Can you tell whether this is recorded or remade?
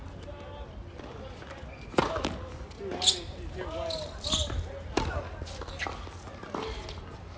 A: recorded